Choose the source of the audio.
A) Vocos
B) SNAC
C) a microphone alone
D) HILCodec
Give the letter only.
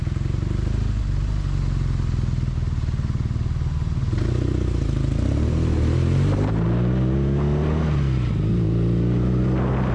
C